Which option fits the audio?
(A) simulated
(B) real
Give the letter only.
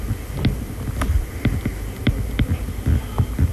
B